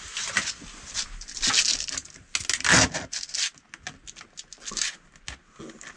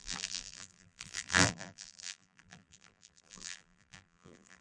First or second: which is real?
first